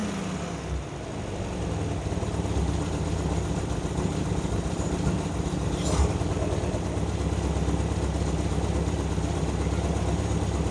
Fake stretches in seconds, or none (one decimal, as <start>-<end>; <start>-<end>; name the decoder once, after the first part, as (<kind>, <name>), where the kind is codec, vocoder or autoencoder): none